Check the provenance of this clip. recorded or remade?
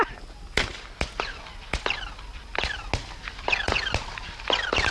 recorded